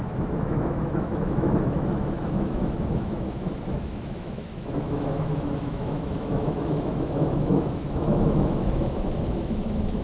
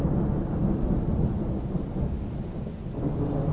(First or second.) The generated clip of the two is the first